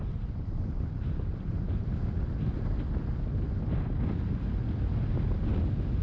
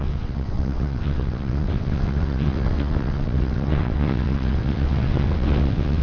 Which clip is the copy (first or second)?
second